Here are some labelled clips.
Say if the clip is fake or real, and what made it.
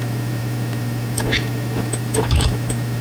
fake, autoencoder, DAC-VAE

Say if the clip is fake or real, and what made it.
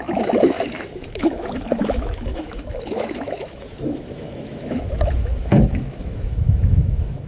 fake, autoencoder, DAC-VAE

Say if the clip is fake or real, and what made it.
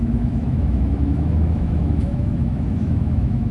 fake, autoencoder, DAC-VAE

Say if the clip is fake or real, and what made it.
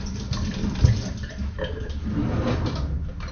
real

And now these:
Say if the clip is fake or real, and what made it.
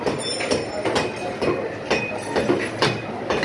real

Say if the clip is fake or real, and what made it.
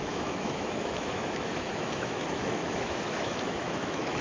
fake, autoencoder, DAC-VAE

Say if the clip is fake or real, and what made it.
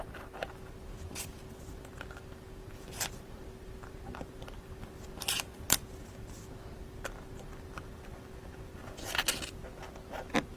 real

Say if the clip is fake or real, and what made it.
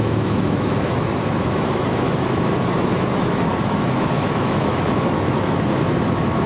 fake, autoencoder, DAC-VAE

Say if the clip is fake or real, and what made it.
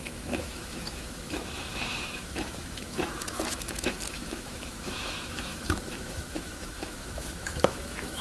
fake, autoencoder, DAC-VAE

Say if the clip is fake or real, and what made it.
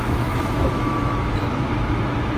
fake, autoencoder, DAC-VAE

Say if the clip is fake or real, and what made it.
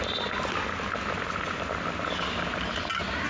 real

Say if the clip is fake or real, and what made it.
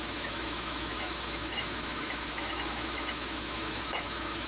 fake, autoencoder, DAC-VAE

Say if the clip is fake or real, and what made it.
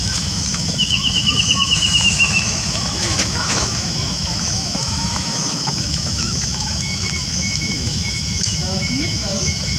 fake, autoencoder, DAC-VAE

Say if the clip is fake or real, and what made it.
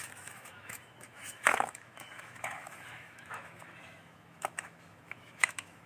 fake, autoencoder, DAC-VAE